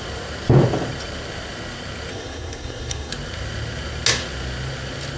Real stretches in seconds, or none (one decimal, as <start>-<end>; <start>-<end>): 0.0-2.1; 3.1-5.2